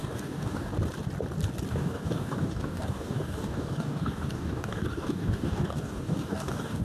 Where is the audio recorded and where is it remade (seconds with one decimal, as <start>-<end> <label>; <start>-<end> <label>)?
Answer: 0.0-0.7 remade; 0.7-1.7 recorded; 1.7-6.8 remade